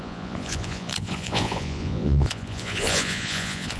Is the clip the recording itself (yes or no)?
no